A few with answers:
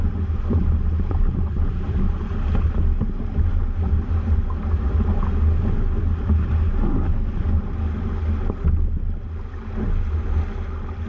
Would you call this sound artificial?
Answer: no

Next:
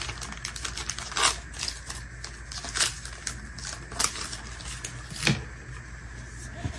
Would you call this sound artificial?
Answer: no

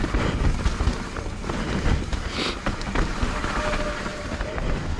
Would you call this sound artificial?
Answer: no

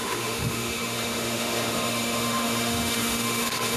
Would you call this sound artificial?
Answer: yes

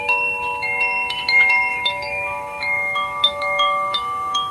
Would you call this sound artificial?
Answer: yes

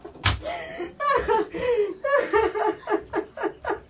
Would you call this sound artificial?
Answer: no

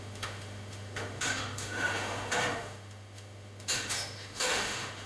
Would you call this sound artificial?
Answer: yes